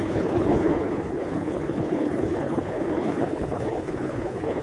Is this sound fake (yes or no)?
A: yes